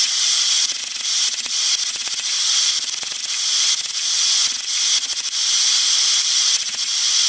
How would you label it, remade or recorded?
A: recorded